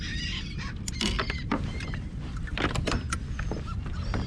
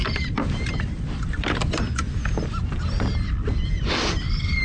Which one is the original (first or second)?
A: second